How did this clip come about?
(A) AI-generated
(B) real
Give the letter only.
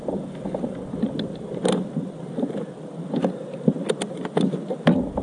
B